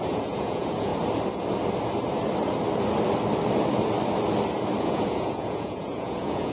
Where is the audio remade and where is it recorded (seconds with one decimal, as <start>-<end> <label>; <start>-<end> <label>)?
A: 0.0-0.9 remade; 0.9-4.8 recorded; 4.8-6.5 remade